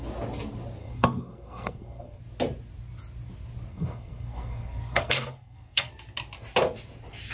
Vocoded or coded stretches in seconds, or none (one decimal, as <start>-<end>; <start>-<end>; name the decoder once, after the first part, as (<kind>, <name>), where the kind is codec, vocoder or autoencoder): 0.8-2.2 (codec, SNAC); 3.7-5.9